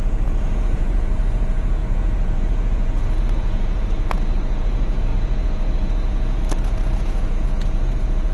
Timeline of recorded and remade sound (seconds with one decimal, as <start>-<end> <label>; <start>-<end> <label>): 0.0-8.3 remade